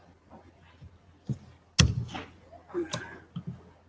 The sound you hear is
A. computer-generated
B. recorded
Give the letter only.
B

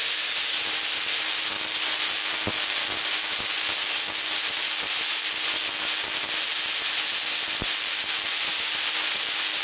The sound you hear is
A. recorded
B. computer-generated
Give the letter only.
A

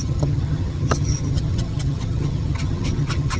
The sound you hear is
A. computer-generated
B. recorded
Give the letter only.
A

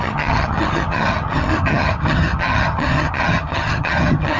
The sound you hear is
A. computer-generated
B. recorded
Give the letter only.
A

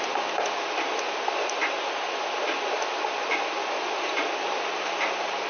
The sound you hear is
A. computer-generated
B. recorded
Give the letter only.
B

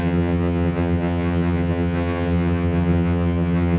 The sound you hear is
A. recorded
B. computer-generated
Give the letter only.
B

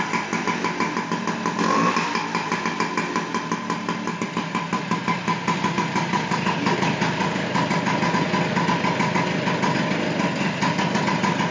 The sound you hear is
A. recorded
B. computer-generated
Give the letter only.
A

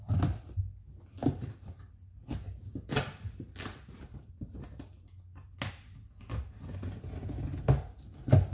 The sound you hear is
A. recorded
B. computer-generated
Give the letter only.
A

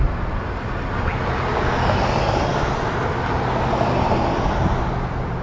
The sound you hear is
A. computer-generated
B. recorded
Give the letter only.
B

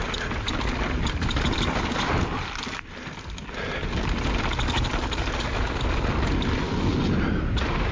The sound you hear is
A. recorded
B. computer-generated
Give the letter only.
A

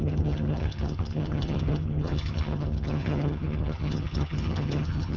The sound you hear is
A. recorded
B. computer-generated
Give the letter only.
B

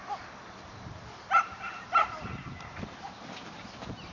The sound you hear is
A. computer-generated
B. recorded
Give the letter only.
B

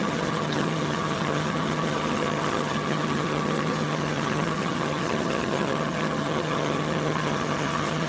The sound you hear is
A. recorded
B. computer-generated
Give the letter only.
B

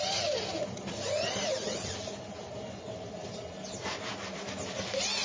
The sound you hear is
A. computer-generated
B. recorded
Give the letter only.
B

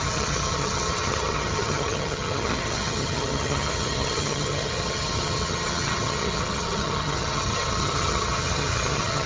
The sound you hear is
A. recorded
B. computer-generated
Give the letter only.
B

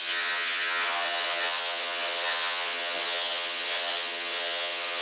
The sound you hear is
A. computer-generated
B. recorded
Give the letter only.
A